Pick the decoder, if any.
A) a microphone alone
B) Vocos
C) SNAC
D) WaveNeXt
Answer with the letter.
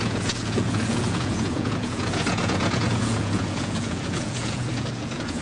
B